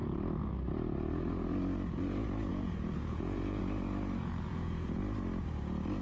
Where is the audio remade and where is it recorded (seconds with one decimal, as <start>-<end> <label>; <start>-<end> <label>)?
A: 0.0-2.5 recorded; 2.5-3.6 remade; 3.6-4.5 recorded; 4.5-5.0 remade; 5.0-6.0 recorded